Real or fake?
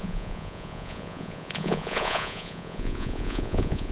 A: fake